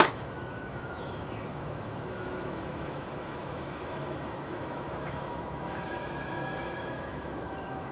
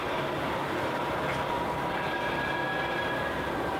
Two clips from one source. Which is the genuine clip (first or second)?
second